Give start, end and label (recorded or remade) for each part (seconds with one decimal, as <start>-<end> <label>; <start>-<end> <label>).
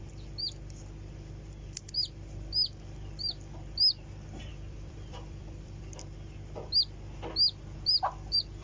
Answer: 0.0-4.5 recorded; 4.5-5.8 remade; 5.8-8.6 recorded